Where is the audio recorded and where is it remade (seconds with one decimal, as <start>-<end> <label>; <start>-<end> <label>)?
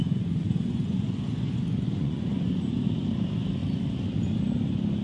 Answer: 0.0-2.8 remade; 2.8-5.0 recorded